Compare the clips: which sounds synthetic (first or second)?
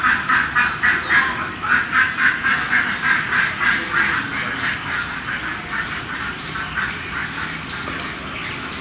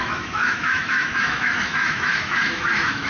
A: second